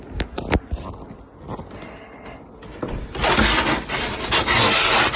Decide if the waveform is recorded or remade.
recorded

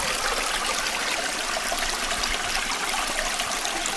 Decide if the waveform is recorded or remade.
recorded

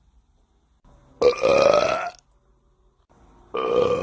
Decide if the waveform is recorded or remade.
recorded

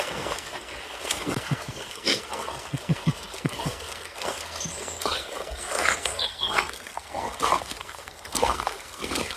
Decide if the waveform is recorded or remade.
remade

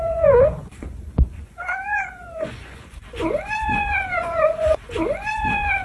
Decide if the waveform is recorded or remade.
remade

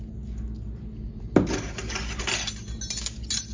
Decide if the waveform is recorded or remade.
recorded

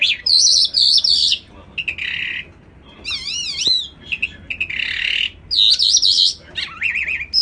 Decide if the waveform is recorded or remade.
recorded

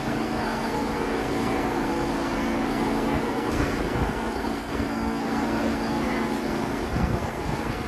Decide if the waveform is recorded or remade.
remade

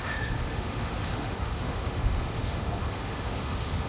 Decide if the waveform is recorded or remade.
remade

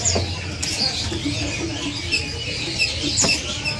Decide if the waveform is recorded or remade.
recorded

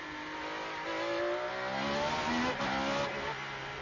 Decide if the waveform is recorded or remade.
recorded